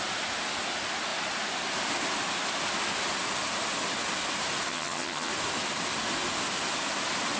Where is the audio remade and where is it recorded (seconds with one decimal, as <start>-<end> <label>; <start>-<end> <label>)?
0.0-4.7 recorded; 4.7-5.3 remade; 5.3-7.4 recorded